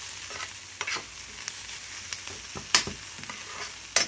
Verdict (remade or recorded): recorded